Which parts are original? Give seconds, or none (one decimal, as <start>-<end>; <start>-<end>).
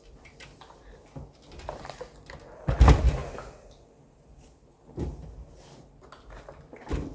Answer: 0.0-7.1